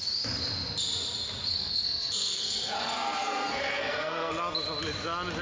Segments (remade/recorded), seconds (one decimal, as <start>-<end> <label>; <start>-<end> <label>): 0.0-1.5 recorded; 1.5-4.3 remade; 4.3-5.4 recorded